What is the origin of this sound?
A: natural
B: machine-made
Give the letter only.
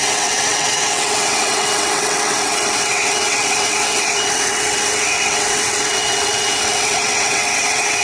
B